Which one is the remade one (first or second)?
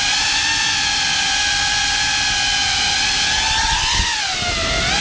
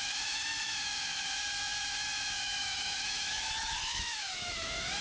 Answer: second